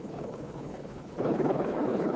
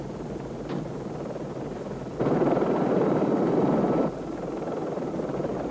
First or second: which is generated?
first